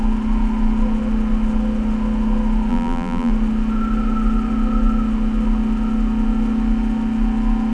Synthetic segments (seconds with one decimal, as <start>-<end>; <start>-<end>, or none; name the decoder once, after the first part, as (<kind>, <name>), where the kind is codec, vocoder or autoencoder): 2.7-3.3 (vocoder, BigVGAN v2)